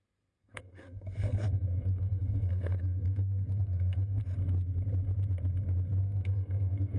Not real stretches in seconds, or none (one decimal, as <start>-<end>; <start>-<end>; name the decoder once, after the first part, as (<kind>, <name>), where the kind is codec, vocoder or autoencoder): 0.4-4.2 (codec, SNAC); 6.0-7.0